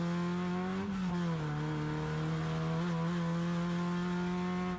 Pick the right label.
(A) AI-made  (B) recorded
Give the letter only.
B